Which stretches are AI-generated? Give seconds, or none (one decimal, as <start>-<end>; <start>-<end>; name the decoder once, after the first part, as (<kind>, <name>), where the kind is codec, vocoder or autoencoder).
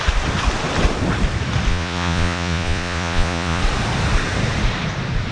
1.7-3.6 (vocoder, Vocos)